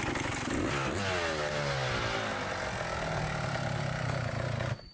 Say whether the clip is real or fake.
real